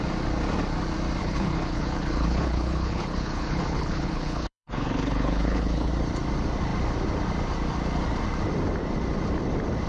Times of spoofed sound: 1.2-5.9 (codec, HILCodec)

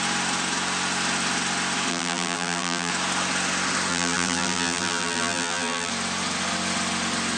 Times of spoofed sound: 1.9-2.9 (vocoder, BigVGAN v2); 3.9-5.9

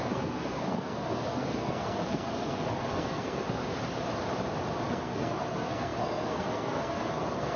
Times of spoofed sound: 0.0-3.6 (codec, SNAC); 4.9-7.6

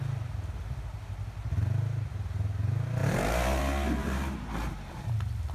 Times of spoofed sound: 3.0-3.6 (vocoder, BigVGAN v2); 4.0-5.0

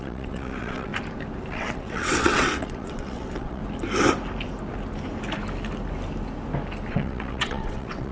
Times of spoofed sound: 0.0-0.9 (vocoder, WaveNeXt); 1.5-3.6; 6.9-8.1